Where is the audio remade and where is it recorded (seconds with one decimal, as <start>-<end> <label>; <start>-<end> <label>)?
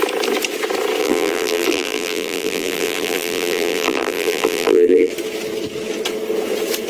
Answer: 0.0-1.0 recorded; 1.0-5.1 remade; 5.1-6.9 recorded